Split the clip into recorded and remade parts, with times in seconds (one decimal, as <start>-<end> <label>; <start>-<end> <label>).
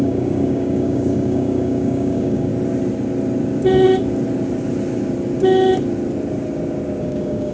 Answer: 0.0-2.5 remade; 2.5-7.0 recorded; 7.0-7.5 remade